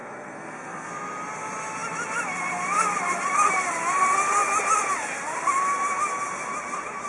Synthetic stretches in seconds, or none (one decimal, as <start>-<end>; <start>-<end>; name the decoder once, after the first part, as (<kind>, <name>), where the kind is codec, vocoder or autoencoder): 0.0-0.9 (codec, SNAC)